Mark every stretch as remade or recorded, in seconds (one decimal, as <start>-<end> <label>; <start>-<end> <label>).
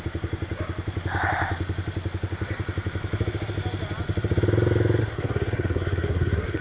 0.0-5.0 recorded; 5.0-6.6 remade